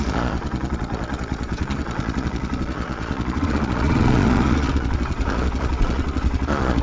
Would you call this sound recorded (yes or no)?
no